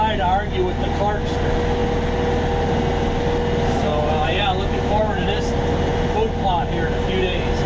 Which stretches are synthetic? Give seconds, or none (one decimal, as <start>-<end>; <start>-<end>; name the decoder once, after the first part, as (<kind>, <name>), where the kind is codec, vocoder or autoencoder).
none